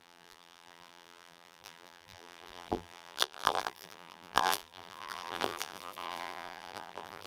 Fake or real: fake